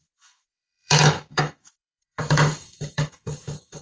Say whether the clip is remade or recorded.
remade